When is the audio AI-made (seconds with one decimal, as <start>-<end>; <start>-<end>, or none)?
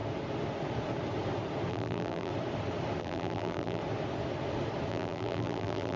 1.7-2.3; 3.0-3.8; 4.9-6.0